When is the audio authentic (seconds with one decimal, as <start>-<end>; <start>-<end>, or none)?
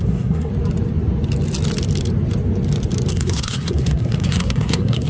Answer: 0.5-3.1